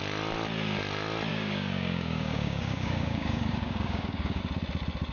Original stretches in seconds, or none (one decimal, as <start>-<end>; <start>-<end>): 0.0-1.3; 4.4-5.1

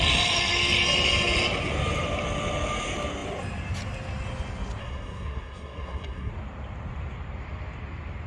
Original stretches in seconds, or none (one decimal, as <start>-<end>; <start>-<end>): 0.0-4.8; 6.3-8.3

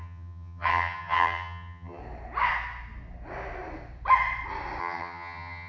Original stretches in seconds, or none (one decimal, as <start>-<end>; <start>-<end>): 2.0-4.8

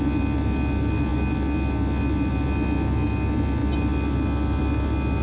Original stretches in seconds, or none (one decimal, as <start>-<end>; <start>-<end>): 0.0-5.2

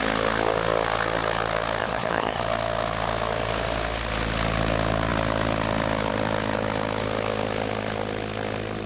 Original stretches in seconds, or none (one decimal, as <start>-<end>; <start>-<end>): 0.0-1.8; 2.4-8.9

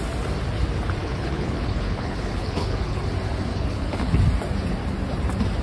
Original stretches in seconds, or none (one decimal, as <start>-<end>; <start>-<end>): 0.0-1.0; 3.0-3.5; 4.2-5.6